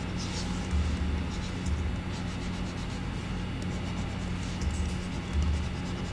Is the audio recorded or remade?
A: recorded